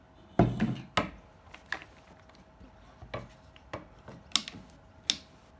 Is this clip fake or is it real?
real